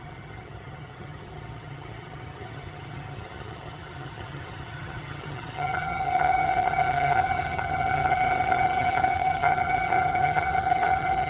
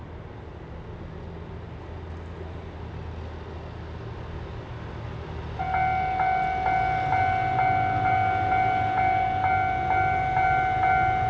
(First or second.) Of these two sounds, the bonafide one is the second